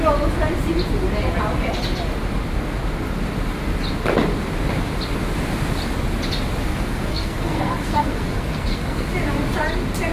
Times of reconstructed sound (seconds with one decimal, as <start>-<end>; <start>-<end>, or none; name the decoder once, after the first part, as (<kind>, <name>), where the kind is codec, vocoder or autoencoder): 6.7-9.1 (codec, SNAC)